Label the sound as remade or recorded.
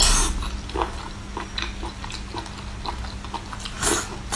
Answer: recorded